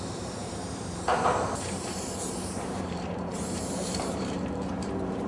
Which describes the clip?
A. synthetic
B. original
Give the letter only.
A